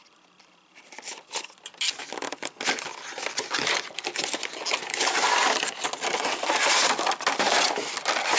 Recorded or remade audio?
recorded